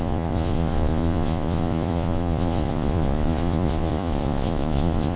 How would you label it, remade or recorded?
remade